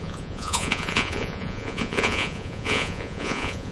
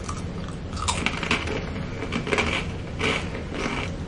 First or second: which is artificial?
first